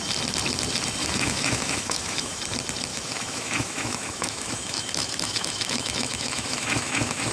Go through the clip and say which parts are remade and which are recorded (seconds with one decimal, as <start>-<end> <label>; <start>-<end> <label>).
0.0-1.0 recorded; 1.0-2.4 remade; 2.4-2.9 recorded; 2.9-7.3 remade